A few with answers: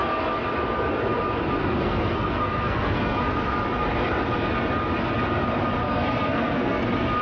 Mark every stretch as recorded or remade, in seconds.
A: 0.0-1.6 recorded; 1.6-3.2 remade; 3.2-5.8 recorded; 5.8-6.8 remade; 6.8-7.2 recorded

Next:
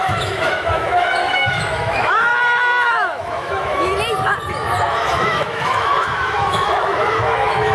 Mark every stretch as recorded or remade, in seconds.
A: 0.0-2.3 remade; 2.3-2.9 recorded; 2.9-3.9 remade; 3.9-4.9 recorded; 4.9-7.7 remade